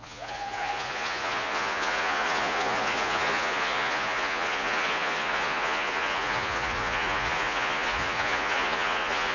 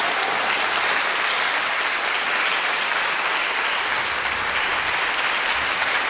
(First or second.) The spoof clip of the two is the first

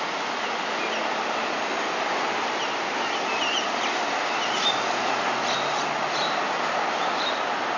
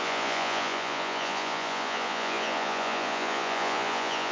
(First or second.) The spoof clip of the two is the second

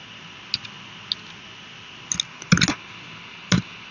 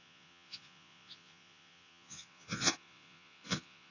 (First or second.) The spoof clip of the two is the second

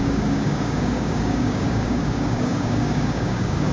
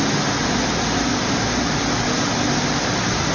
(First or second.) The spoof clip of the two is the first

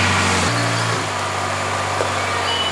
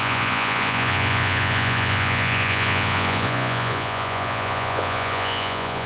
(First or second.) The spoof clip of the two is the second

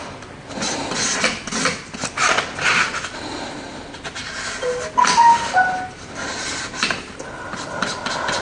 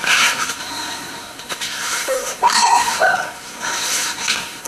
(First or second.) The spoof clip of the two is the second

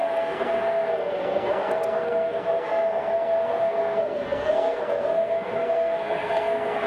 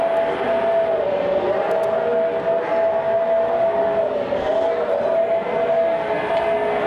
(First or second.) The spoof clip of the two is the first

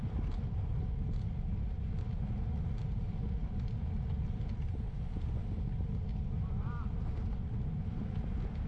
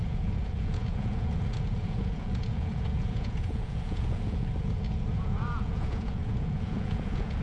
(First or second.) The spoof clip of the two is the second